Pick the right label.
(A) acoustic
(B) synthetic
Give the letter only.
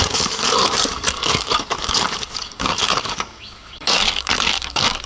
B